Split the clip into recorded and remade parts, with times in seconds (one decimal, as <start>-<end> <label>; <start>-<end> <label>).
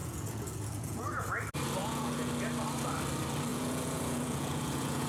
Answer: 0.0-1.3 remade; 1.3-1.8 recorded; 1.8-2.3 remade; 2.3-3.5 recorded; 3.5-5.1 remade